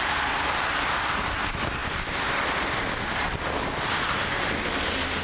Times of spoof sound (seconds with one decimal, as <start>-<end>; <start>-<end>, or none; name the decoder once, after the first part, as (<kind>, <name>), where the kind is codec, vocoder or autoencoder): none